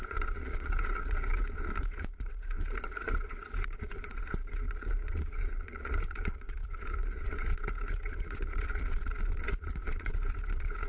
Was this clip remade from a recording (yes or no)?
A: yes